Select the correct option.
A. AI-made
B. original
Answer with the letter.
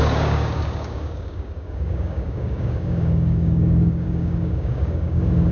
A